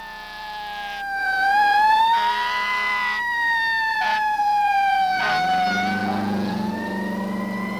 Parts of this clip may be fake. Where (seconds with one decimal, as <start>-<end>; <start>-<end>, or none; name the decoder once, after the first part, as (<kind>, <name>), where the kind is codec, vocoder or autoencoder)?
1.2-2.0 (vocoder, Vocos); 3.9-5.3; 6.0-6.7